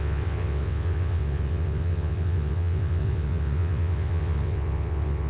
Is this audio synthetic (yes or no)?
yes